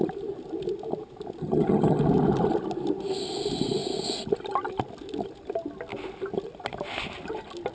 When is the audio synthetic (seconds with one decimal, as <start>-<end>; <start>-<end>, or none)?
1.4-2.0